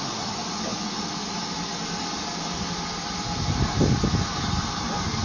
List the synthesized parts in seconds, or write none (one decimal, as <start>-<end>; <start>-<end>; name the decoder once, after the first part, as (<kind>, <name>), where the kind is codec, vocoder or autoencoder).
none